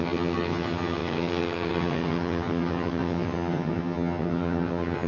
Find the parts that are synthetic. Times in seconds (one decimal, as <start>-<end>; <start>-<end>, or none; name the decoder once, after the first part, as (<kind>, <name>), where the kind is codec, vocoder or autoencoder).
0.0-5.1 (vocoder, HiFi-GAN)